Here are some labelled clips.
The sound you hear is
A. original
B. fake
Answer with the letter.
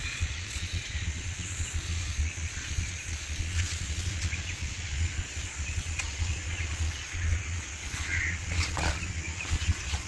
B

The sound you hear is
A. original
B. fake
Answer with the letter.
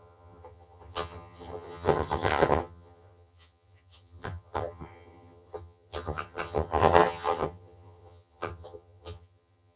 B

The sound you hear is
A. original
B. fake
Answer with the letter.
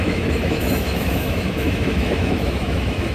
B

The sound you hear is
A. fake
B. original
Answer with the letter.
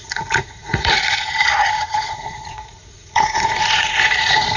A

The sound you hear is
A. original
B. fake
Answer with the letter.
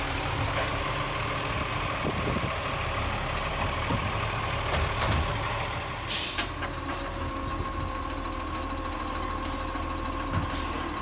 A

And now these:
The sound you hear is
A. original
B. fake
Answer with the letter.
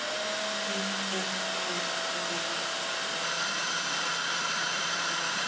A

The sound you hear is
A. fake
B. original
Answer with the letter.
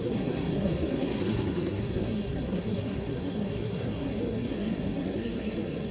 A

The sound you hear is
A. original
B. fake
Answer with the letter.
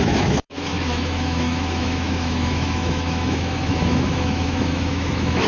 B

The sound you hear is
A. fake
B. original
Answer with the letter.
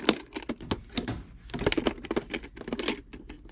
B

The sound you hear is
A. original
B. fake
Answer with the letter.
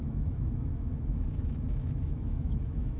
B